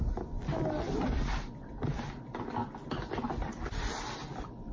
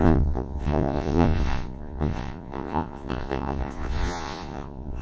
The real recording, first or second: first